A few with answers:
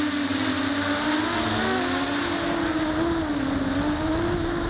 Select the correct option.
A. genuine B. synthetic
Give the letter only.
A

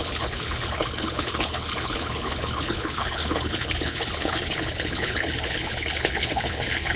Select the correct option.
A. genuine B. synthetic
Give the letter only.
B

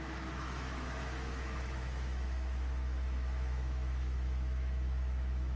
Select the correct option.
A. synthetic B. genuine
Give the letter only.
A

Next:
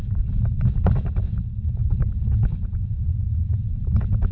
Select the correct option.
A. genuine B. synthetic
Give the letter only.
B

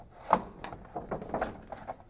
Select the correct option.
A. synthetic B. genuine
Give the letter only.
B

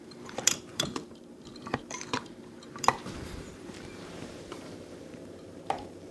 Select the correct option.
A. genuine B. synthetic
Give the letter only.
B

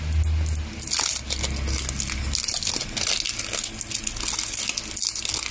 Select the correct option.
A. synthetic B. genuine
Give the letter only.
B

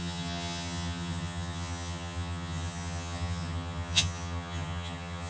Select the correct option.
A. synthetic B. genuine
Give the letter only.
A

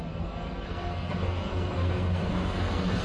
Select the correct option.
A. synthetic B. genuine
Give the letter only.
A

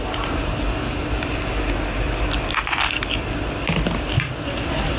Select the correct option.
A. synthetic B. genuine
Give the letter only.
B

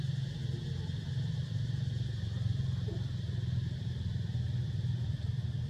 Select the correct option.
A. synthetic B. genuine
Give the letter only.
B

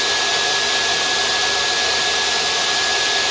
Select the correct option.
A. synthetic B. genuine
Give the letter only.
B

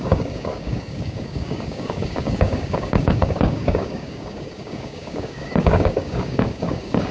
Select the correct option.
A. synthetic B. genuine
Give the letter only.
A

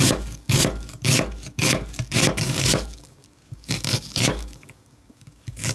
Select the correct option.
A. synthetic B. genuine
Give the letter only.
A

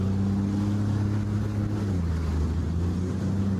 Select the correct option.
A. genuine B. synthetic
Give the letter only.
A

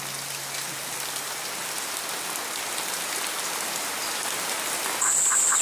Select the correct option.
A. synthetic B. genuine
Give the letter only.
B